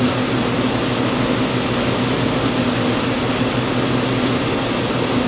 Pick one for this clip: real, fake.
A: real